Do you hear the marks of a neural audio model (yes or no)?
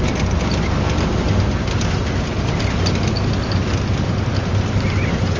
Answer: no